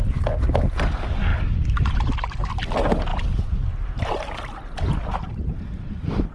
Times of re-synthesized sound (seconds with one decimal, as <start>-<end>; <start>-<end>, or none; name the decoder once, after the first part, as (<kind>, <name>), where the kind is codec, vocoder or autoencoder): none